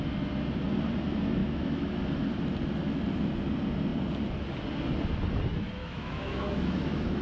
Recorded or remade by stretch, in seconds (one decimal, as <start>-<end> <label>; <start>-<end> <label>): 0.0-1.4 recorded; 1.4-2.0 remade; 2.0-5.8 recorded; 5.8-7.2 remade